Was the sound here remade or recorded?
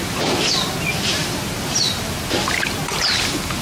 recorded